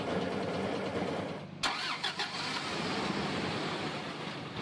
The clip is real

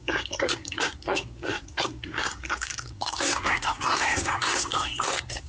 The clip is fake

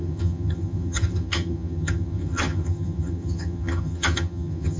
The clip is fake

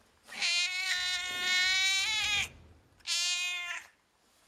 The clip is real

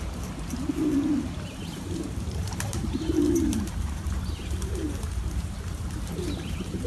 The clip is fake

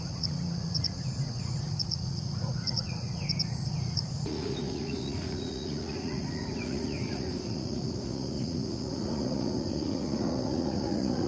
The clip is fake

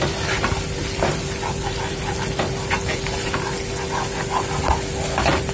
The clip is real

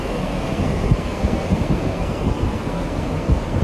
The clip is fake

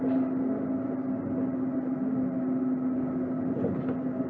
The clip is real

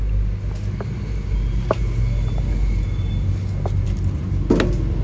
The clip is real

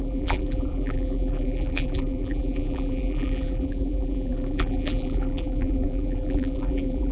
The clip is fake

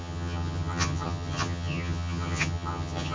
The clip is fake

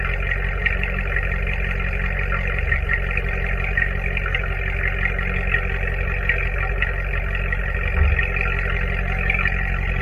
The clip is real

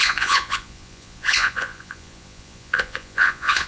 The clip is fake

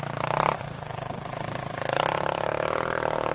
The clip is fake